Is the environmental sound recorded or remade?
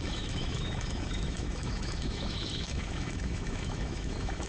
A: remade